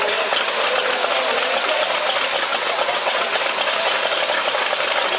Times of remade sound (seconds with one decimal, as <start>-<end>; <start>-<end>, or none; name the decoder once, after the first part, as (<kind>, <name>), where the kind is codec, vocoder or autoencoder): 2.5-3.4 (vocoder, WaveNeXt)